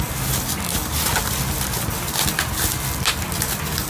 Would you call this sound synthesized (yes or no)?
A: no